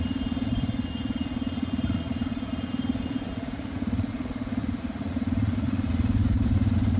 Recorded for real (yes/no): no